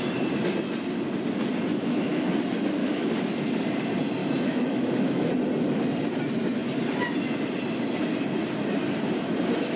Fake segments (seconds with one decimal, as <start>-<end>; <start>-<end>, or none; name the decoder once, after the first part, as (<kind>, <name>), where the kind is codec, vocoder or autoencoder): 1.7-2.3 (autoencoder, DAC-VAE); 2.8-3.6; 4.2-5.3